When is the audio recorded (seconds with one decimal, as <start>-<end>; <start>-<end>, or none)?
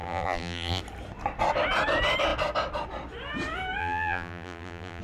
0.8-3.8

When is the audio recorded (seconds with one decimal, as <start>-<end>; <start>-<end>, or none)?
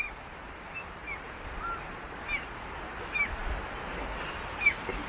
0.0-5.1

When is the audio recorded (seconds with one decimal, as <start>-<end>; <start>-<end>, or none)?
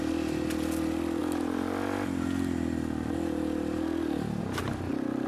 0.0-5.3